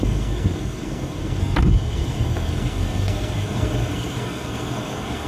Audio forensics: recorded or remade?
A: remade